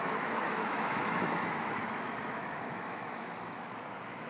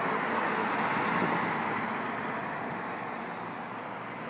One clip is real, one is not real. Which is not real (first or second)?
first